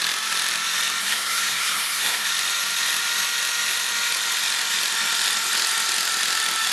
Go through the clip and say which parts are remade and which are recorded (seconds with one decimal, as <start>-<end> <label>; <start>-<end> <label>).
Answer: 0.0-1.0 recorded; 1.0-2.3 remade; 2.3-6.7 recorded